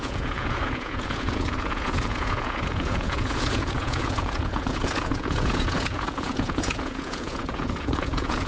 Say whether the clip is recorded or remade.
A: remade